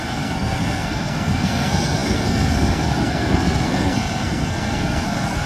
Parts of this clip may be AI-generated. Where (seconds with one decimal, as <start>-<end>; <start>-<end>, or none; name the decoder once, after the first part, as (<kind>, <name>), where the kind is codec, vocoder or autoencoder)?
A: 0.0-5.5 (codec, SNAC)